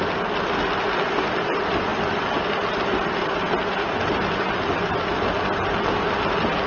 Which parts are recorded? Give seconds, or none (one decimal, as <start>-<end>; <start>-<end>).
0.0-6.7